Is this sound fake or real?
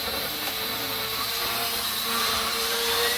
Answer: fake